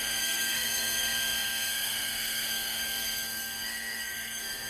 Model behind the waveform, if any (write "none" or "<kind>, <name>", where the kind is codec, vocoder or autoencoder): codec, SNAC